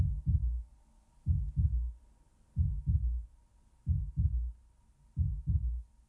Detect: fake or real real